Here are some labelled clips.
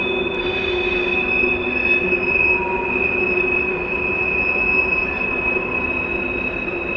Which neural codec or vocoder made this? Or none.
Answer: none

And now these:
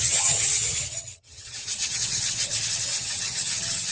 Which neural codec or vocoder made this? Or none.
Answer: vocoder, HiFi-GAN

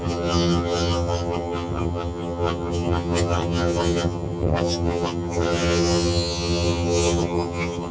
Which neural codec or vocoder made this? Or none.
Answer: vocoder, HiFi-GAN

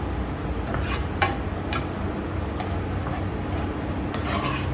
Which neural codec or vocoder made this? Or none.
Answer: none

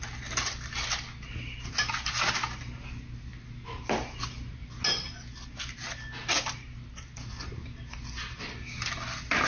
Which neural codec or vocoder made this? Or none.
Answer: none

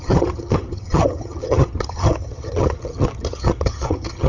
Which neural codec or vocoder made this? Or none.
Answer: vocoder, HiFi-GAN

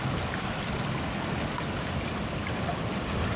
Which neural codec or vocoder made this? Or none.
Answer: none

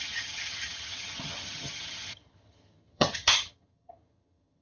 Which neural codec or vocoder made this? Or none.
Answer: vocoder, HiFi-GAN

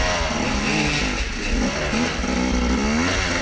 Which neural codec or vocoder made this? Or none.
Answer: none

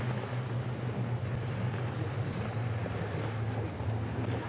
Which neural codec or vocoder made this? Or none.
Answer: none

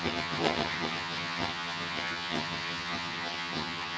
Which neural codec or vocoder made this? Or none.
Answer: vocoder, HiFi-GAN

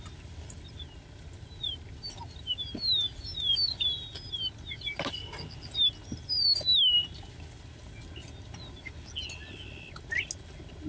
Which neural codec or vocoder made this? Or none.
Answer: none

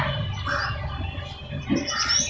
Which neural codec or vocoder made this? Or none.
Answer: none